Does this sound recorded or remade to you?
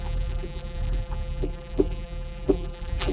remade